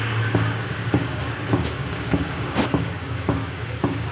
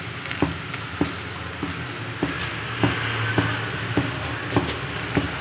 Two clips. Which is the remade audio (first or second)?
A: first